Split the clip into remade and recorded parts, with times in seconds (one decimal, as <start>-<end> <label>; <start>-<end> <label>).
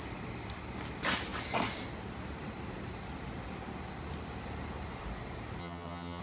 0.0-5.6 recorded; 5.6-6.2 remade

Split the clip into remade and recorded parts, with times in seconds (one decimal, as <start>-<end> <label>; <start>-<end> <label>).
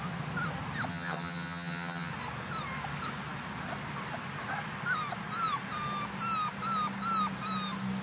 0.0-0.9 recorded; 0.9-2.1 remade; 2.1-8.0 recorded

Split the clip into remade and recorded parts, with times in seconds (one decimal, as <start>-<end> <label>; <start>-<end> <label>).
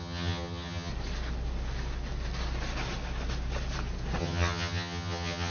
0.0-0.9 remade; 0.9-4.2 recorded; 4.2-5.5 remade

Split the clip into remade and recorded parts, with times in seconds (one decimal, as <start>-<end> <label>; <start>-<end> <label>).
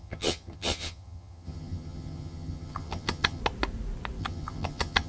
0.0-3.4 remade; 3.4-4.2 recorded; 4.2-5.1 remade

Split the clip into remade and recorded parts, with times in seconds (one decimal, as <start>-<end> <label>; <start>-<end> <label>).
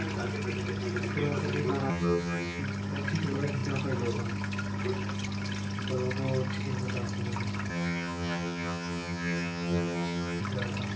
0.0-1.9 recorded; 1.9-2.6 remade; 2.6-7.7 recorded; 7.7-10.4 remade; 10.4-11.0 recorded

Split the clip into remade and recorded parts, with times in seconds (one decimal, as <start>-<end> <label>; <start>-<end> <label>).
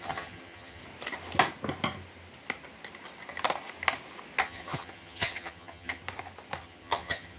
0.0-0.8 remade; 0.8-4.4 recorded; 4.4-6.0 remade; 6.0-6.6 recorded; 6.6-7.4 remade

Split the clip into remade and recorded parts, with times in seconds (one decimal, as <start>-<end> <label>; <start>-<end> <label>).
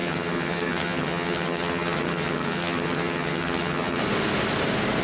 0.0-4.0 remade; 4.0-5.0 recorded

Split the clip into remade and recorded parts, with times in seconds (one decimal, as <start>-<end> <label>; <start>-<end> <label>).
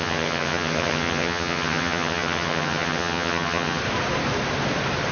0.0-3.8 remade; 3.8-5.1 recorded